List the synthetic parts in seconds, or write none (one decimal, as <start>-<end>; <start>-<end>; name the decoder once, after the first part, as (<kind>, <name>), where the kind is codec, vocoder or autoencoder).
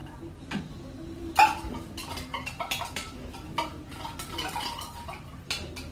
2.0-3.9 (vocoder, BigVGAN v2)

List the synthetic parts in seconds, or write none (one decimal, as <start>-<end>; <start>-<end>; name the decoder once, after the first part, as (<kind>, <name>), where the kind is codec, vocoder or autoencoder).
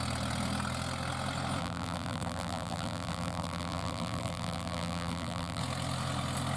1.6-5.6 (vocoder, BigVGAN v2)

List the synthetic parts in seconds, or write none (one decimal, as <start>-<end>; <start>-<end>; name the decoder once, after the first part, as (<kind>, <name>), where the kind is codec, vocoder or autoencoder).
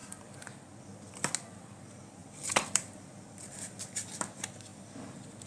2.2-4.3 (vocoder, BigVGAN v2); 4.7-5.5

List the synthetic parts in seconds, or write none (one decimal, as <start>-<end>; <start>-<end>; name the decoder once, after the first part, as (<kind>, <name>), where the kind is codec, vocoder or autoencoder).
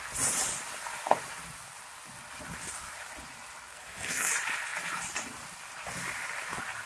3.7-4.3 (codec, SNAC)